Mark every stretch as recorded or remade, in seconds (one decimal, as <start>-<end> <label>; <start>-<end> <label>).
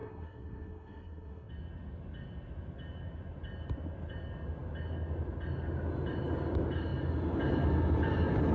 0.0-1.5 remade; 1.5-8.5 recorded